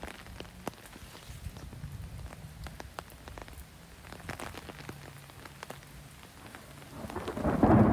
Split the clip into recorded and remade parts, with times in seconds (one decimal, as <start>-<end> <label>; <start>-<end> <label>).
0.0-7.9 recorded